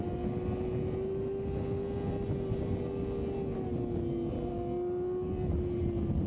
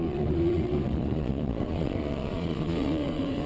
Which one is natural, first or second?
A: first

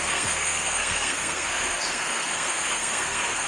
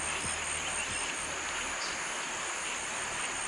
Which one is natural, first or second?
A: second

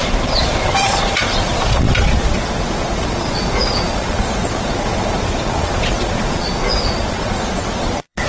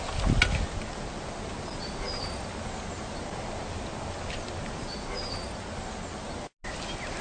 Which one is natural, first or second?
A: second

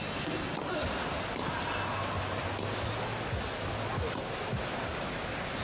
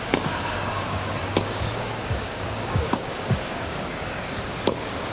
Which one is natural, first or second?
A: first